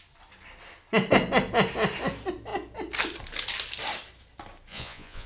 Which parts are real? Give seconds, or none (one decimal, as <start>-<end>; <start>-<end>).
0.0-4.7